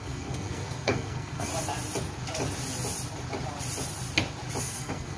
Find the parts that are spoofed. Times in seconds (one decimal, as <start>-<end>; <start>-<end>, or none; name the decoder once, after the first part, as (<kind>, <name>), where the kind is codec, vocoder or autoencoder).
0.0-1.5 (codec, SNAC); 4.6-5.2